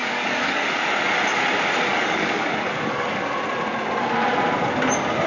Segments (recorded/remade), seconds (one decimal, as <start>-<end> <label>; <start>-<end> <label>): 0.0-0.8 remade; 0.8-1.9 recorded; 1.9-3.2 remade; 3.2-5.3 recorded